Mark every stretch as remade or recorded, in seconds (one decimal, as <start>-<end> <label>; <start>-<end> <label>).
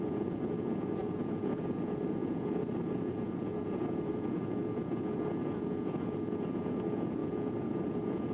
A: 0.0-8.3 remade